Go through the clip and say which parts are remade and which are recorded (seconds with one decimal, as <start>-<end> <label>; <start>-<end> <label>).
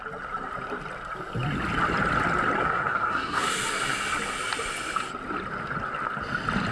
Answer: 0.0-2.6 recorded; 2.6-3.5 remade; 3.5-6.7 recorded